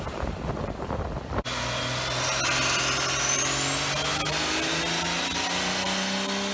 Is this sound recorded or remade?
recorded